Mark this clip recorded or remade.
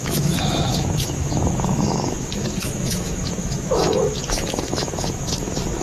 remade